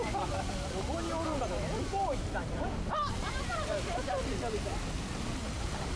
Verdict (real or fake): real